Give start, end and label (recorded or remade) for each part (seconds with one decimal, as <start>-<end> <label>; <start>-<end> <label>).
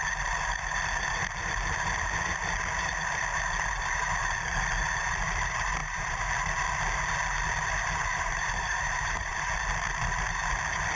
0.0-5.8 recorded; 5.8-6.3 remade; 6.3-8.1 recorded; 8.1-9.3 remade; 9.3-11.0 recorded